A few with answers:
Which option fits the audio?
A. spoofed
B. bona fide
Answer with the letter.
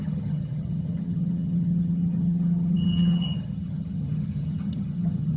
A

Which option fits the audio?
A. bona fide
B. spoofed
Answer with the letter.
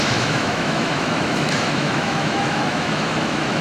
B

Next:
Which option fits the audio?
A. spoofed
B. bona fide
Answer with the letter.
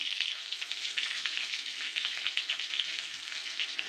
A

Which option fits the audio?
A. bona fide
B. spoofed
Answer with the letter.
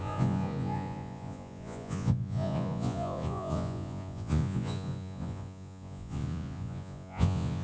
B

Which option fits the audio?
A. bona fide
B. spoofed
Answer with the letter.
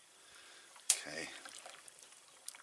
A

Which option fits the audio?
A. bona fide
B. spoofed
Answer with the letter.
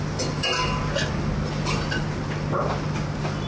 A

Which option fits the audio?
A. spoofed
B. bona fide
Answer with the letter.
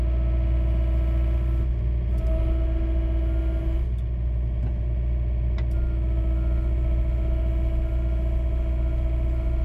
B